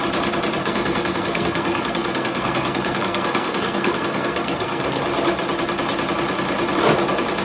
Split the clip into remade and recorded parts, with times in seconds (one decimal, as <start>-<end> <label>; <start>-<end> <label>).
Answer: 0.0-0.6 recorded; 0.6-5.0 remade; 5.0-7.4 recorded